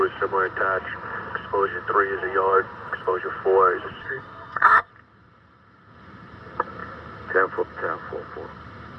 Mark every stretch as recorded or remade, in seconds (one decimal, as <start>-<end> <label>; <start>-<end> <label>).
0.0-4.0 recorded; 4.0-4.9 remade; 4.9-9.0 recorded